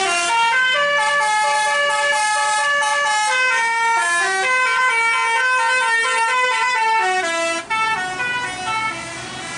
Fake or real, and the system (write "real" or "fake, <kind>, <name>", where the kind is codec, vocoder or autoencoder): real